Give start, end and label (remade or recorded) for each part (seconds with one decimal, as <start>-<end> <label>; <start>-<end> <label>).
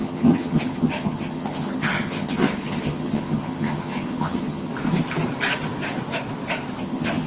0.0-4.7 remade; 4.7-6.8 recorded; 6.8-7.3 remade